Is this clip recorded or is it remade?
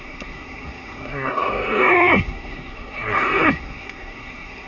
remade